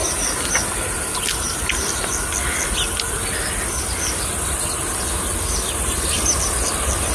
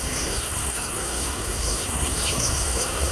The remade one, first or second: second